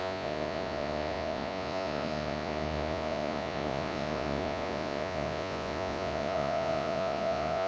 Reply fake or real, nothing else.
fake